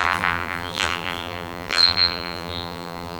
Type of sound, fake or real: fake